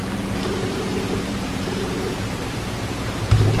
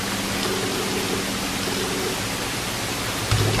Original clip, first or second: second